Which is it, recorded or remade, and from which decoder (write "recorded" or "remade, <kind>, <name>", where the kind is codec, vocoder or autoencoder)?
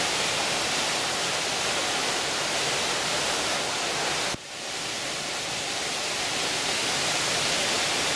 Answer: recorded